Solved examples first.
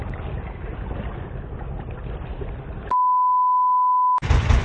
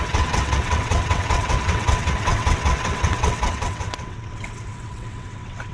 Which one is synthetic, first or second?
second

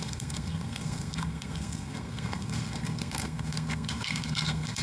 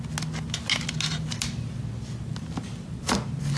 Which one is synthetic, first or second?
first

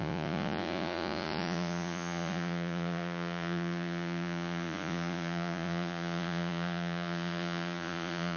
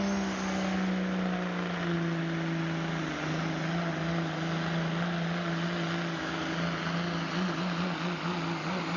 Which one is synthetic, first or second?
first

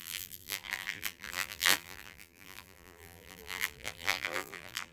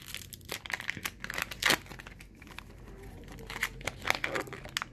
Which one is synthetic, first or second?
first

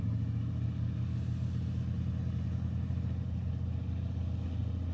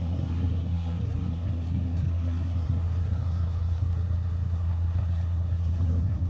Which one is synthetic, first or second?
second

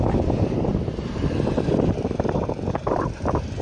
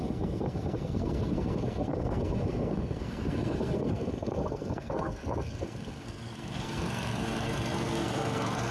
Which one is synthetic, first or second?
second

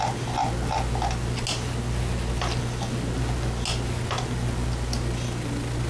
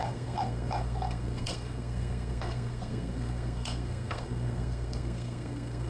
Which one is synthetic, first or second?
second